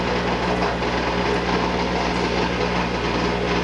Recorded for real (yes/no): yes